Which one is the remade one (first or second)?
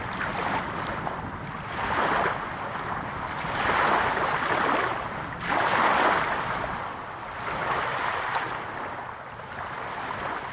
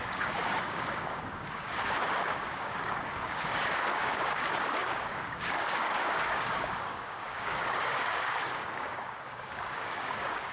second